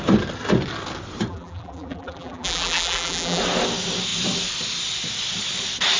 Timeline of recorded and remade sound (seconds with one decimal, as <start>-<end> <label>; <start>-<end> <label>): 0.0-1.3 recorded; 1.3-3.4 remade; 3.4-6.0 recorded